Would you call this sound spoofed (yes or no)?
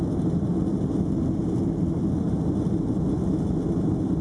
no